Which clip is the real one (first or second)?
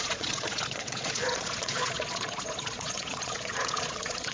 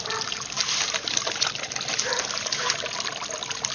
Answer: second